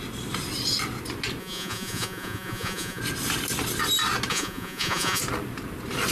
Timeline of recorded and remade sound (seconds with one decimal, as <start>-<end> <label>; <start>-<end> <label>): 0.0-1.4 recorded; 1.4-3.0 remade; 3.0-4.3 recorded; 4.3-5.2 remade; 5.2-6.1 recorded